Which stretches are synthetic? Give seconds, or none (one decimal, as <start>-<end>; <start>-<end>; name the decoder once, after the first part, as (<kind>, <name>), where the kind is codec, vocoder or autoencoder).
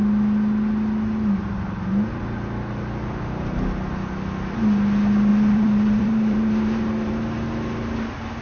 5.3-7.1 (vocoder, BigVGAN v2)